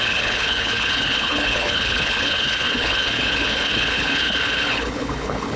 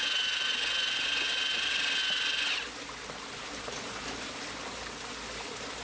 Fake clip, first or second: first